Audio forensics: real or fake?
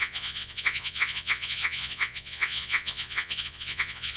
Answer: fake